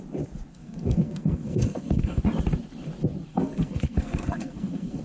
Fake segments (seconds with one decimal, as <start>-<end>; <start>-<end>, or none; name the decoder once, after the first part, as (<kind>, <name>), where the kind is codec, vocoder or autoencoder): 0.5-2.2 (codec, SNAC); 3.3-5.0